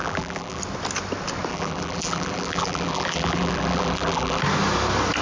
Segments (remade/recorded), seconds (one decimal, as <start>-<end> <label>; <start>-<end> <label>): 0.0-0.6 remade; 0.6-1.5 recorded; 1.5-4.4 remade; 4.4-5.2 recorded